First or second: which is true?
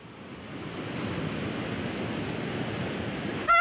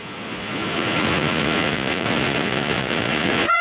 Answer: first